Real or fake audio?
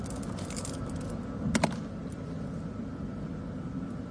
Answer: real